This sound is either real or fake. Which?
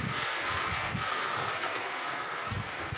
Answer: fake